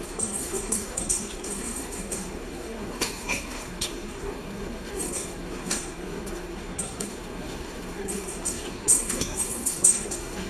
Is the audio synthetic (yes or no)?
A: yes